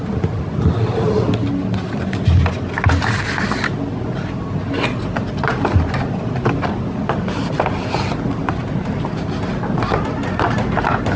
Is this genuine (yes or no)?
yes